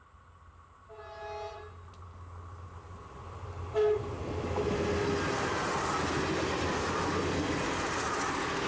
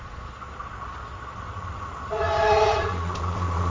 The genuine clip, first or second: first